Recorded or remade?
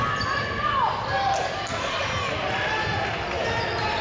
recorded